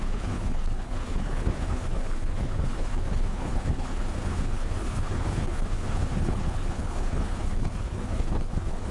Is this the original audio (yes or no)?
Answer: no